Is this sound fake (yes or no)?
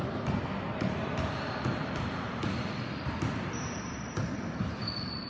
yes